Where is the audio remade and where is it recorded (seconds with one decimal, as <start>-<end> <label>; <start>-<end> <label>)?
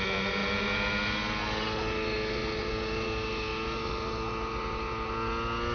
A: 0.0-5.7 recorded